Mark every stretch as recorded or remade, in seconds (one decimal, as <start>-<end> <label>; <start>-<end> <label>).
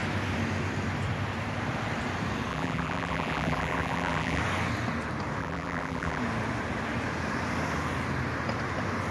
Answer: 0.0-2.5 recorded; 2.5-4.4 remade; 4.4-5.4 recorded; 5.4-6.2 remade; 6.2-9.1 recorded